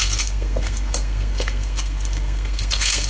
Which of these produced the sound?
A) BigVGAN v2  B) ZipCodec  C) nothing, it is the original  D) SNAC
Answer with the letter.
D